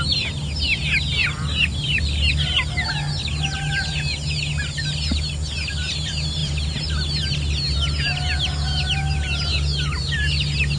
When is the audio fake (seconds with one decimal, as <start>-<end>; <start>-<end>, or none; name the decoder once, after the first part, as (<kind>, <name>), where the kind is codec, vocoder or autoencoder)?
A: 1.2-2.3 (vocoder, BigVGAN v2)